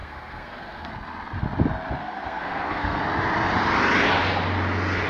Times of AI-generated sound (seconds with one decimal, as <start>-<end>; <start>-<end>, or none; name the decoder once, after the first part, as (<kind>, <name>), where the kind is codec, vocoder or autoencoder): 0.0-0.9 (codec, SNAC); 2.0-3.0